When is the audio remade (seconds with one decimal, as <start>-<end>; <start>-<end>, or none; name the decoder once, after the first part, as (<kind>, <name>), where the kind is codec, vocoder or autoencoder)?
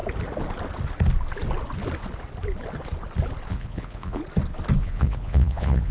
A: 3.5-4.2 (vocoder, Vocos); 4.8-5.9